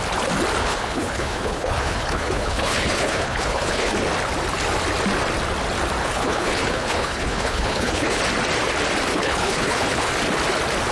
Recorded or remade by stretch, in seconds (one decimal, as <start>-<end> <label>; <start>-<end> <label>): 0.0-0.6 recorded; 0.6-3.9 remade; 3.9-6.0 recorded; 6.0-8.2 remade; 8.2-9.1 recorded; 9.1-10.1 remade; 10.1-10.9 recorded